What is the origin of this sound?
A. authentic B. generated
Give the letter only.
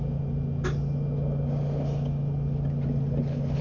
A